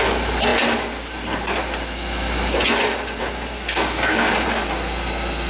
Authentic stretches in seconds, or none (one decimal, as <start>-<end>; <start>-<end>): 0.0-5.5